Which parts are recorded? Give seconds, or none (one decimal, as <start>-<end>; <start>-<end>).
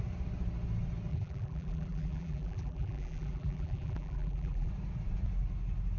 0.0-1.1; 4.7-6.0